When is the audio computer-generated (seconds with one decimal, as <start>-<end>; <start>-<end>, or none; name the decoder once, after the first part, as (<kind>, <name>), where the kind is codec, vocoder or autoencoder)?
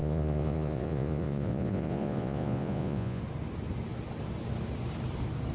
0.0-3.2 (vocoder, Vocos)